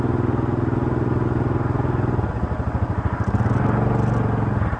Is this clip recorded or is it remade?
recorded